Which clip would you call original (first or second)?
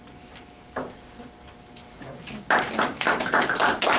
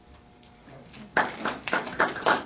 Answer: first